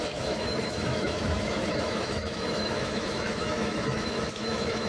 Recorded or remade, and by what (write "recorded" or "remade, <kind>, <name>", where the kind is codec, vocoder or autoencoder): remade, autoencoder, DAC-VAE